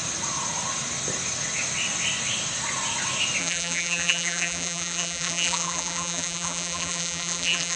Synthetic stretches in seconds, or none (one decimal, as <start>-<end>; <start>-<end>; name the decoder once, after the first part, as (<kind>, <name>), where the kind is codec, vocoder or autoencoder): 3.4-7.8 (vocoder, BigVGAN v2)